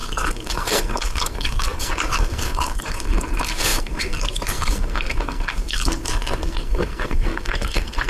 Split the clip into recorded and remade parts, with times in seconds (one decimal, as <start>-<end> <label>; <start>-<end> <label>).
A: 0.0-8.1 remade